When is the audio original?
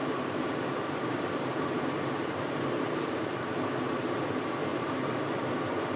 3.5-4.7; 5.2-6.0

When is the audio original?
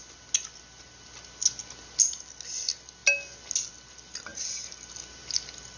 0.0-5.8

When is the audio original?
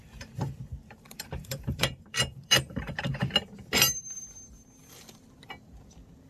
0.0-0.8; 3.3-6.3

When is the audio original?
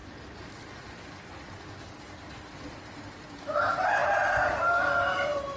1.2-5.6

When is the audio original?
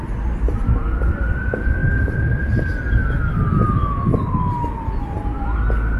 0.0-1.8; 2.5-6.0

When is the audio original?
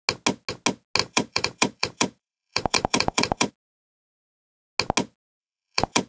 0.0-1.0; 3.5-5.4